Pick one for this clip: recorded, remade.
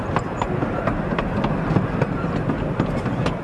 recorded